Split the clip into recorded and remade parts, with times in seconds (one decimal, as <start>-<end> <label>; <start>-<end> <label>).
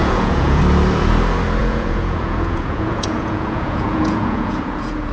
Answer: 0.0-0.6 remade; 0.6-1.6 recorded; 1.6-5.1 remade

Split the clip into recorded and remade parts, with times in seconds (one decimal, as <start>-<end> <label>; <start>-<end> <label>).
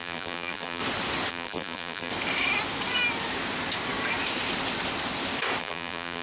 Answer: 0.0-0.8 remade; 0.8-1.3 recorded; 1.3-2.1 remade; 2.1-5.6 recorded; 5.6-6.2 remade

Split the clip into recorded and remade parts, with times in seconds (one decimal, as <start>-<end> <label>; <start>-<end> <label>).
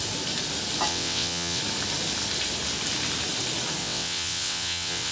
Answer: 0.0-0.9 recorded; 0.9-1.6 remade; 1.6-3.8 recorded; 3.8-5.1 remade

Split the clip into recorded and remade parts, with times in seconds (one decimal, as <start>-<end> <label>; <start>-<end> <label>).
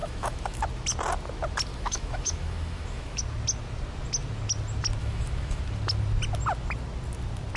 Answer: 0.0-0.6 remade; 0.6-1.7 recorded; 1.7-3.2 remade; 3.2-5.0 recorded; 5.0-5.6 remade; 5.6-7.6 recorded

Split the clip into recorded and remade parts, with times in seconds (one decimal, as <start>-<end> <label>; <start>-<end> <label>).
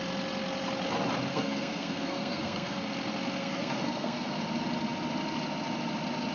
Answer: 0.0-1.3 recorded; 1.3-2.9 remade; 2.9-3.4 recorded; 3.4-4.4 remade; 4.4-6.3 recorded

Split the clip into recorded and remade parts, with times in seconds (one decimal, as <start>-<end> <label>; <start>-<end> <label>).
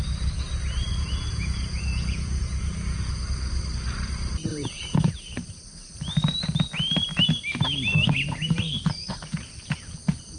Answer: 0.0-0.9 recorded; 0.9-3.2 remade; 3.2-4.5 recorded; 4.5-5.1 remade; 5.1-10.4 recorded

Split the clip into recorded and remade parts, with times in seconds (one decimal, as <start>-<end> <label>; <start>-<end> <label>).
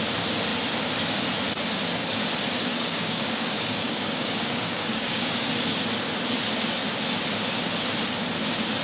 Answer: 0.0-2.7 recorded; 2.7-5.5 remade; 5.5-8.8 recorded